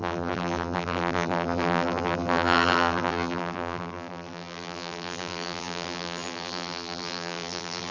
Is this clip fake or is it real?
fake